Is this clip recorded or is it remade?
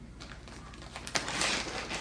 recorded